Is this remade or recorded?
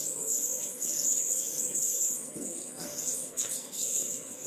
remade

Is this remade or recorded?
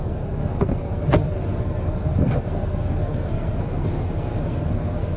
remade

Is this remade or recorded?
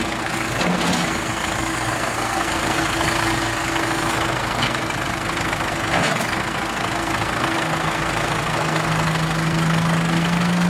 remade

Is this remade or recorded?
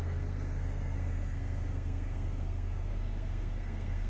remade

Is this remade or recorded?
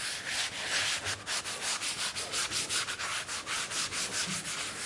recorded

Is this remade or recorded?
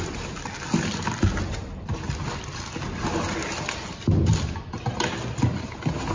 recorded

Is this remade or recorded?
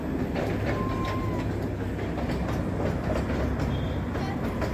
recorded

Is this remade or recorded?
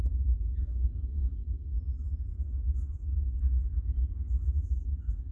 recorded